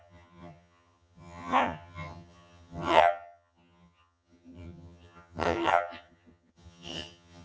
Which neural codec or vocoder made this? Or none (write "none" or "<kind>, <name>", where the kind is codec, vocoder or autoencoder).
vocoder, HiFi-GAN